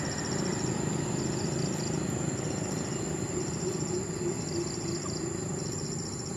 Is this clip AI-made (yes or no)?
no